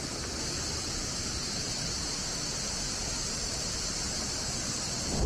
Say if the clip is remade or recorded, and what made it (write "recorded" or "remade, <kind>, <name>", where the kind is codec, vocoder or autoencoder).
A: recorded